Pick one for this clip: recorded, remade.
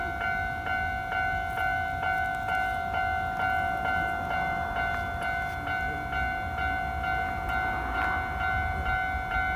recorded